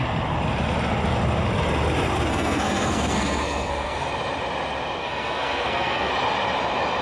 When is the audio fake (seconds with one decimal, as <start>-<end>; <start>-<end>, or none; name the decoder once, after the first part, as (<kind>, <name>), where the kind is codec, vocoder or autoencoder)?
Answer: 2.3-4.1 (codec, SNAC); 5.0-6.1